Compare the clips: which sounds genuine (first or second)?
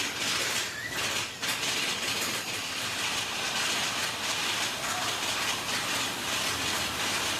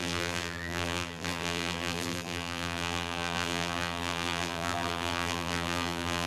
first